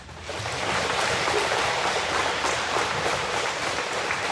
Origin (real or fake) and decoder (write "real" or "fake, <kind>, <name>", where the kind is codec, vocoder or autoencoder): fake, vocoder, BigVGAN v2